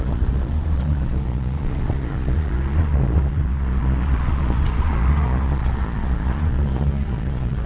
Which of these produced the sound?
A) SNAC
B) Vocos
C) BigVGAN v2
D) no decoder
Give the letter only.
B